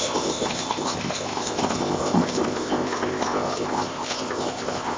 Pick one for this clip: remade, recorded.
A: remade